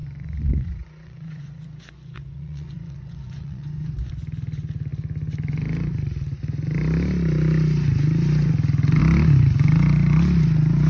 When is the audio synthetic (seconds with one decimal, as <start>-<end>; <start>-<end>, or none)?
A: 0.0-4.1